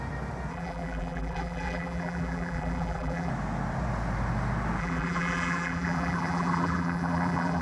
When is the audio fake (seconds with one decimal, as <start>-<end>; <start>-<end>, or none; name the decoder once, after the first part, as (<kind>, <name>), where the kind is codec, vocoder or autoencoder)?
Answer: 0.5-3.3 (vocoder, BigVGAN v2); 4.8-7.6